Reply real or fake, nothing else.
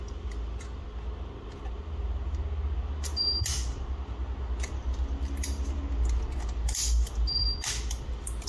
real